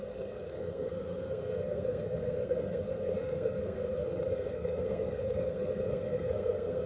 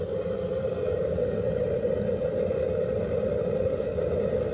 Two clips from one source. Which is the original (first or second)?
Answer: second